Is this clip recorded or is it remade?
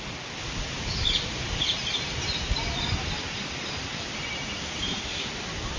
recorded